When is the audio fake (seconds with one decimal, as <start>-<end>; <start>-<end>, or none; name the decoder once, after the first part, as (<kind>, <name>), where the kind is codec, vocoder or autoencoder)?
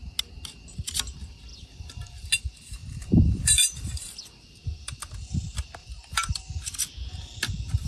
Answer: 2.8-5.0 (vocoder, BigVGAN v2); 5.8-6.6